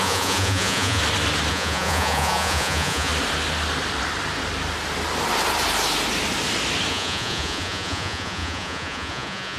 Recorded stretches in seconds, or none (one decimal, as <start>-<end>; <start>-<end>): 1.0-1.5; 3.1-6.9